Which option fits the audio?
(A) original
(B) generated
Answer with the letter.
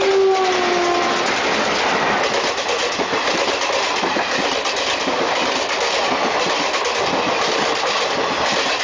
A